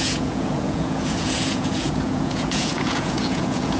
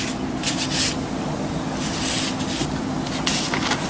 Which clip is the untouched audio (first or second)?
second